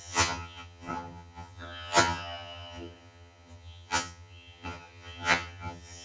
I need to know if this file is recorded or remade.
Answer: remade